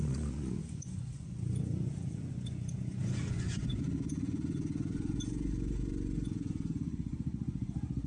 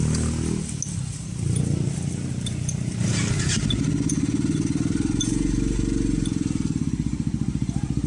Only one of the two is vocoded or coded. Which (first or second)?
first